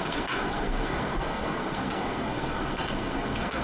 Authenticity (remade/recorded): remade